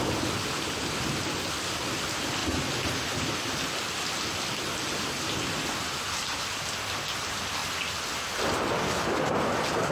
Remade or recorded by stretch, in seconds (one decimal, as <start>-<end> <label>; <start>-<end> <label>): 0.0-9.9 recorded